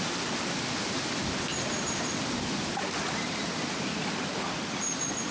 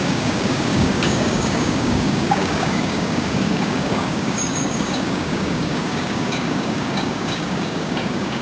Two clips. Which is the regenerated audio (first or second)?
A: second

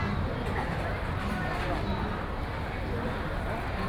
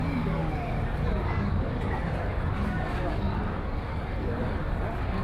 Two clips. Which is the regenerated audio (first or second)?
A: second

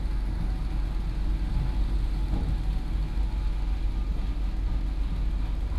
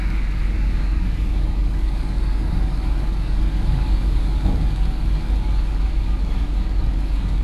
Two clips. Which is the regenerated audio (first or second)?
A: second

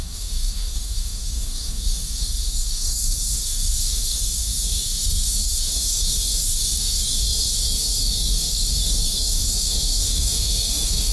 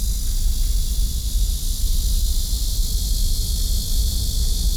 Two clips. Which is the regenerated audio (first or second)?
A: first